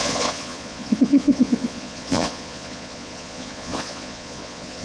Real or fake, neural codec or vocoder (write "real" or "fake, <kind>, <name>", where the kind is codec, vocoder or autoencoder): fake, vocoder, Vocos